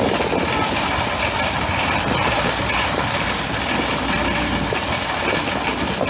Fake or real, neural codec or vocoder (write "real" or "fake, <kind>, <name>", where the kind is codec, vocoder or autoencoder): real